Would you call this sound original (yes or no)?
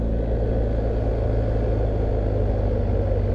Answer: yes